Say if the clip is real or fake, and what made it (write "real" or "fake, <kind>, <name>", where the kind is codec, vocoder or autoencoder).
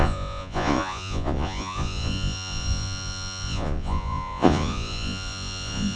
fake, vocoder, Vocos